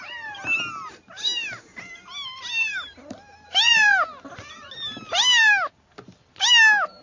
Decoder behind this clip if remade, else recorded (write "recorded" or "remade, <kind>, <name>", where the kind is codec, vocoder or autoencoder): recorded